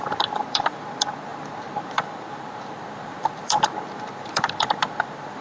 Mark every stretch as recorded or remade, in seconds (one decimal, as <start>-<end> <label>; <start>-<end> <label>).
0.0-5.4 remade